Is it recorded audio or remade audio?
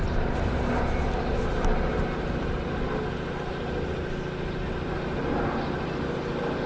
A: recorded